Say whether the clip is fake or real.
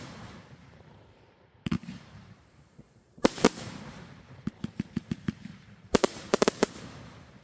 fake